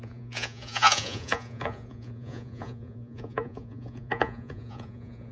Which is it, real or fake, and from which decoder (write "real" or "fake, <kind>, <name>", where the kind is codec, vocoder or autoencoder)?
fake, vocoder, Vocos